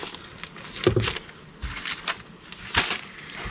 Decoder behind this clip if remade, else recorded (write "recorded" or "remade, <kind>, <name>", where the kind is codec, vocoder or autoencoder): recorded